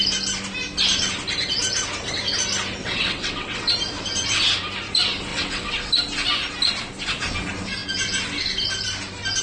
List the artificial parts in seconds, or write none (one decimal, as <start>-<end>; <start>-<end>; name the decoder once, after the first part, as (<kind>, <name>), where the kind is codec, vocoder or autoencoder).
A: 2.8-3.7 (vocoder, WaveNeXt); 5.3-5.9